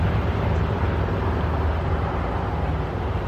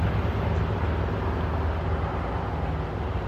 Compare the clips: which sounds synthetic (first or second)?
first